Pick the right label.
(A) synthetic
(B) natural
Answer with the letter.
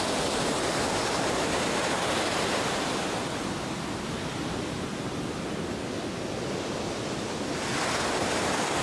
B